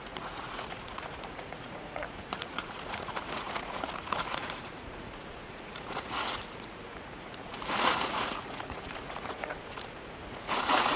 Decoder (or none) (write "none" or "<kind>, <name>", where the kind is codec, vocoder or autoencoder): vocoder, Vocos